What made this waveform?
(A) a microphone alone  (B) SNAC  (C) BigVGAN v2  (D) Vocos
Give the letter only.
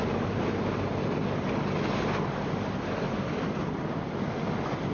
A